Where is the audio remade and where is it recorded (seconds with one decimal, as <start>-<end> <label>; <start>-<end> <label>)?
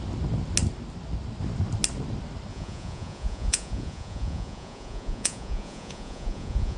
0.0-2.5 recorded; 2.5-6.8 remade